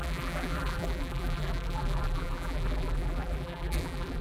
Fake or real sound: fake